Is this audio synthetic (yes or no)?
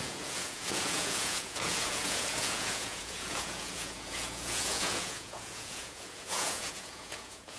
yes